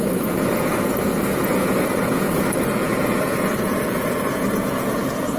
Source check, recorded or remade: remade